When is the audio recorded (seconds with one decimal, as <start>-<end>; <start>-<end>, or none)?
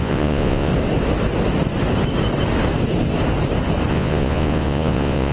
0.7-3.9